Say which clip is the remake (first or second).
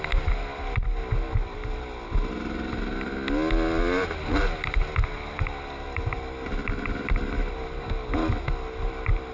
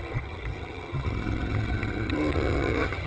second